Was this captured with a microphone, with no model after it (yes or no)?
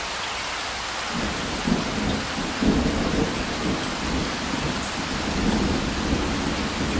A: yes